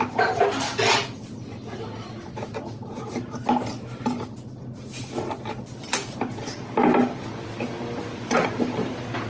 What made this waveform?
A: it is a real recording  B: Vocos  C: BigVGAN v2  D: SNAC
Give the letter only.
A